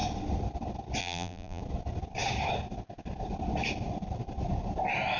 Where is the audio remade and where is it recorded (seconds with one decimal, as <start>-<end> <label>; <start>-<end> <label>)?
0.0-1.0 recorded; 1.0-1.6 remade; 1.6-5.2 recorded